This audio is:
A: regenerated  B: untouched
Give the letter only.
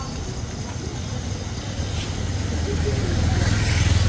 B